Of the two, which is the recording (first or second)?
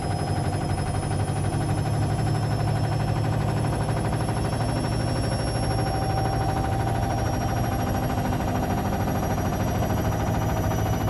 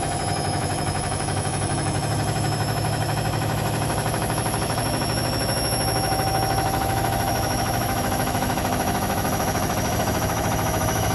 first